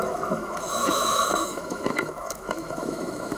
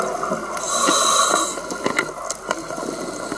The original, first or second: second